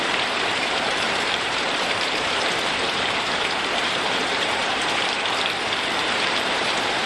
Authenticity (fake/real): fake